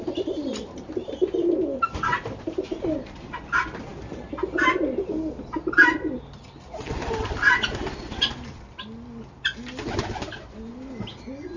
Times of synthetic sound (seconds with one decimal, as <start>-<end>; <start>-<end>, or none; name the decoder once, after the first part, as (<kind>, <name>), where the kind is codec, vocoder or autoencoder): none